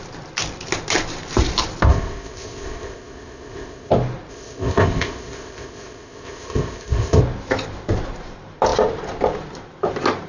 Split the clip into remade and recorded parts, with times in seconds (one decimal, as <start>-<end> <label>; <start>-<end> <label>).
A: 0.0-1.9 recorded; 1.9-3.9 remade; 3.9-4.3 recorded; 4.3-7.2 remade; 7.2-10.3 recorded